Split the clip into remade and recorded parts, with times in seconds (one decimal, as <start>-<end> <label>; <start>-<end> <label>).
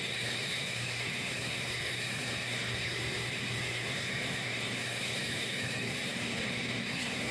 0.0-7.3 remade